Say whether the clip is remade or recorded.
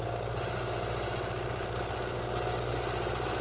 recorded